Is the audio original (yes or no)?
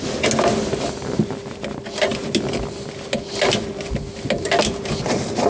yes